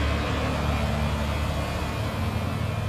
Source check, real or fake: real